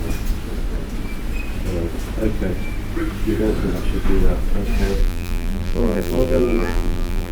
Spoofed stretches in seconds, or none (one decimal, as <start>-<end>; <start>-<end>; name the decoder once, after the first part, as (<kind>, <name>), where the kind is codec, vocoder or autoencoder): 5.0-7.3 (vocoder, BigVGAN v2)